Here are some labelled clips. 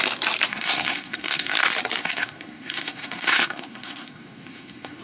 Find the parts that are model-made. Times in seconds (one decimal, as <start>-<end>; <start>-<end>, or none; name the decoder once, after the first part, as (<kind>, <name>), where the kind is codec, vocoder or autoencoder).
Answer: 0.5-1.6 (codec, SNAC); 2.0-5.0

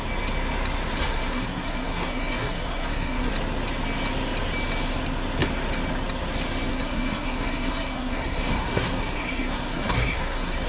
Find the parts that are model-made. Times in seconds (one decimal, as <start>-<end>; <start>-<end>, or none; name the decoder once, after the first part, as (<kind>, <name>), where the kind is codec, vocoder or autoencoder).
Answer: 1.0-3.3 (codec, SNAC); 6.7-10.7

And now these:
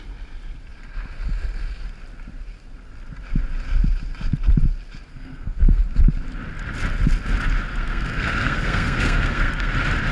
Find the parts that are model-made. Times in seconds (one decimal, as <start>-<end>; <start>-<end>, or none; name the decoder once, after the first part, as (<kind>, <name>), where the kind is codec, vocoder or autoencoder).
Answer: 5.1-5.8 (codec, SNAC); 7.7-9.7

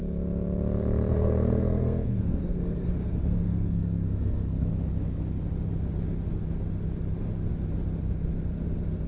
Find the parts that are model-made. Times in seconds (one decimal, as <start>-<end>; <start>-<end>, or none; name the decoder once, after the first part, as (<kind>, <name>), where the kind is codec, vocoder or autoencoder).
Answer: 1.1-4.7 (codec, SNAC)

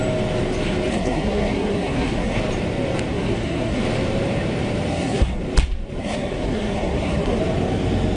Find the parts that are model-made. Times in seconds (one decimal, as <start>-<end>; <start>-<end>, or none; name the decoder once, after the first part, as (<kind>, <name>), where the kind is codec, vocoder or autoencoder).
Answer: 0.9-2.4 (codec, SNAC); 3.1-3.8; 4.9-5.4; 6.0-7.4

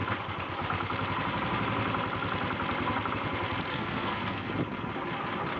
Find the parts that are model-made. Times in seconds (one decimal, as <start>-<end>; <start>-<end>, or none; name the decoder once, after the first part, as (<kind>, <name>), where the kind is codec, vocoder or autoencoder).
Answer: 3.7-4.5 (codec, SNAC)

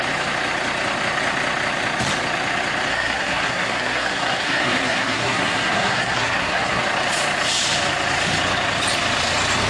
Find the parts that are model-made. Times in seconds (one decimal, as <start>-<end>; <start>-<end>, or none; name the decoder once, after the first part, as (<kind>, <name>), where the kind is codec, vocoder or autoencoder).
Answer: 2.9-6.8 (codec, SNAC)

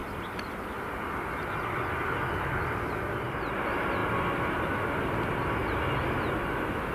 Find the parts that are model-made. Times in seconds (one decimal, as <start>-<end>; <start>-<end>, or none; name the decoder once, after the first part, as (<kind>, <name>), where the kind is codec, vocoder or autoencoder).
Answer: none